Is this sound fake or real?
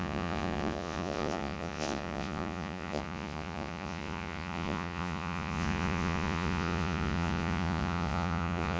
fake